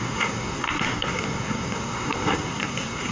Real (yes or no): no